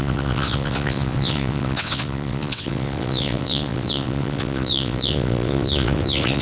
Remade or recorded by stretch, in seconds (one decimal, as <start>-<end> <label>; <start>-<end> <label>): 0.0-6.4 remade